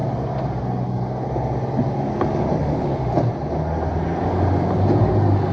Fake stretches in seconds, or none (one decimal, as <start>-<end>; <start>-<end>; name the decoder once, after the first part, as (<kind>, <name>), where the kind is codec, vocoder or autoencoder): none